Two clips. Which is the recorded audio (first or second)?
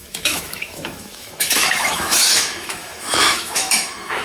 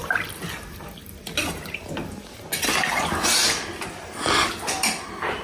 second